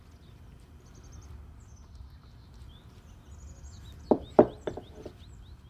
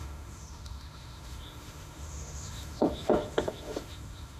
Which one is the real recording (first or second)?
first